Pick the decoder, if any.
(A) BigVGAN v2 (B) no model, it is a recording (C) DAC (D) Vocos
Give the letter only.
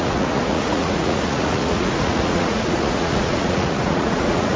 D